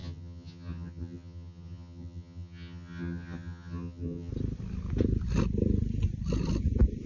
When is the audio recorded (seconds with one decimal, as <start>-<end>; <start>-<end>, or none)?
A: 4.3-7.1